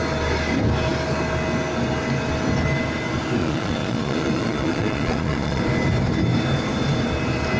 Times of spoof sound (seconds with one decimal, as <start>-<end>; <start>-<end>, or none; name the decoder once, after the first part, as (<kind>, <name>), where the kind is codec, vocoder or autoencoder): 3.4-5.6 (vocoder, Vocos)